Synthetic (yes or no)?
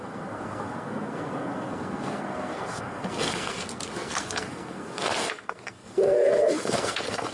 yes